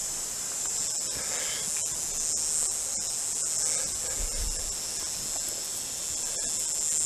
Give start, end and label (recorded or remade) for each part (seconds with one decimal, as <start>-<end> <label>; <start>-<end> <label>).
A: 0.0-0.8 remade; 0.8-7.1 recorded